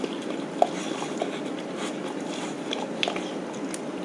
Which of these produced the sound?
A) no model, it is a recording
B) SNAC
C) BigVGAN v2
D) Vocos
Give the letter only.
A